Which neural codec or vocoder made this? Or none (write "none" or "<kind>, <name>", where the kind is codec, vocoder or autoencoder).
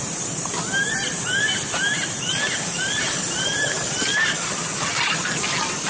none